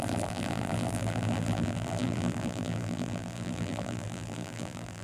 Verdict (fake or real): fake